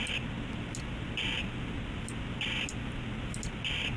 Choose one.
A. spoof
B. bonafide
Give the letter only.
B